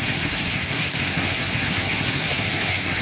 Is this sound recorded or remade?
remade